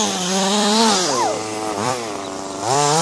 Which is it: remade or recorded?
remade